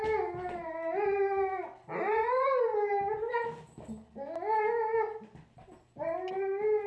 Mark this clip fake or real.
real